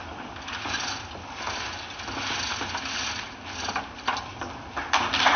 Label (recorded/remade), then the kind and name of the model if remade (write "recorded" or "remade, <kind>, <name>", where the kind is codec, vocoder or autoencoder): recorded